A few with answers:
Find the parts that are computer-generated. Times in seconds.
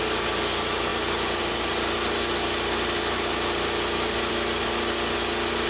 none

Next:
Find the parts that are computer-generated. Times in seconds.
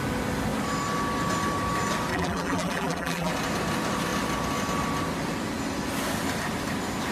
2.1-3.3 (vocoder, BigVGAN v2)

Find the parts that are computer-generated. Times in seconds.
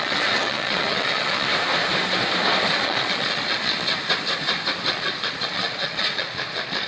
0.0-1.5 (vocoder, Vocos); 2.7-3.9; 4.9-6.9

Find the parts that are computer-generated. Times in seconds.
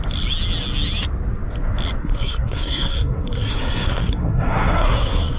2.0-5.4 (codec, SNAC)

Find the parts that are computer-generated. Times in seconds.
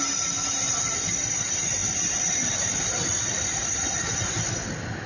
none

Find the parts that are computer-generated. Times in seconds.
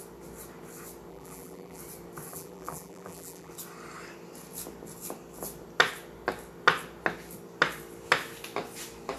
1.1-1.8 (vocoder, BigVGAN v2); 2.3-3.5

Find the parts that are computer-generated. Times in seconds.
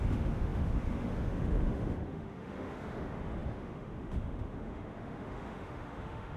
0.0-6.4 (autoencoder, DAC-VAE)